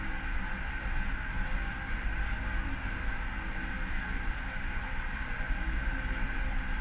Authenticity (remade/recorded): recorded